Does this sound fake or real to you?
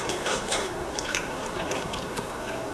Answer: fake